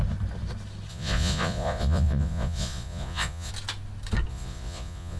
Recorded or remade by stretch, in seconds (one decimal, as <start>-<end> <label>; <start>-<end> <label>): 0.0-0.9 recorded; 0.9-3.5 remade; 3.5-4.3 recorded; 4.3-5.2 remade